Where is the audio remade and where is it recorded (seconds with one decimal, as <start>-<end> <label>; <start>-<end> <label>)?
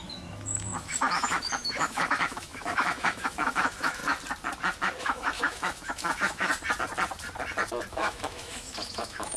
0.0-4.0 remade; 4.0-5.0 recorded; 5.0-6.5 remade; 6.5-7.9 recorded; 7.9-9.4 remade